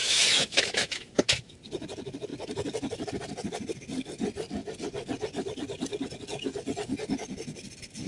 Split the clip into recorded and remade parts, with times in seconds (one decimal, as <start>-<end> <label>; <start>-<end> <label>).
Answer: 0.0-1.6 remade; 1.6-8.1 recorded